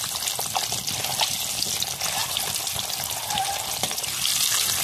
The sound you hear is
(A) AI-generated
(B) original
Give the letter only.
B